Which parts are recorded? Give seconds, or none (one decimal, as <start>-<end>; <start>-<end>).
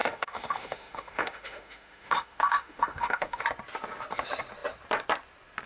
3.4-5.7